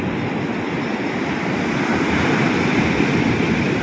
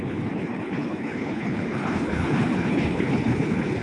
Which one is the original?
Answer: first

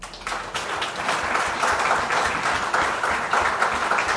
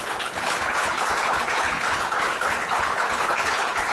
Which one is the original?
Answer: first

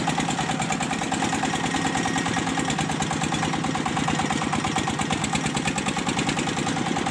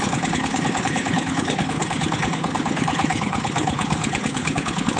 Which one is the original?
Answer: first